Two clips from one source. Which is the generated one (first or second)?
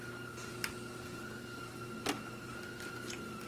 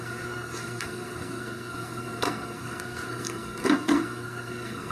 second